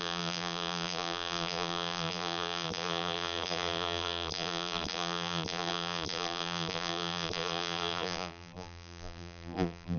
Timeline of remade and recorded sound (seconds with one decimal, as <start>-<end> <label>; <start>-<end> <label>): 0.0-10.0 remade

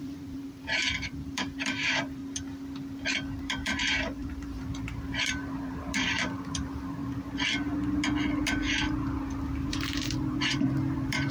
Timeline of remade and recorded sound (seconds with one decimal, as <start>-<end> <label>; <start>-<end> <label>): 0.0-2.2 remade; 2.2-3.4 recorded; 3.4-7.0 remade; 7.0-9.7 recorded; 9.7-11.3 remade

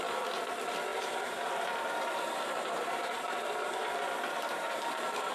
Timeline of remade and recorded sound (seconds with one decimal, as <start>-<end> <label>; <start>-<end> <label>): 0.0-0.9 recorded; 0.9-3.9 remade; 3.9-4.5 recorded; 4.5-5.3 remade